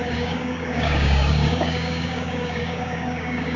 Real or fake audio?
fake